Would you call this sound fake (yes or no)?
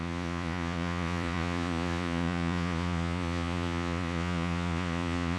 yes